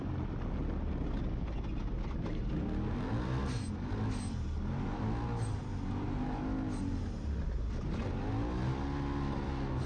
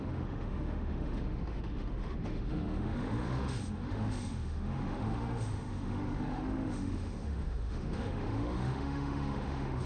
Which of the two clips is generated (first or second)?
second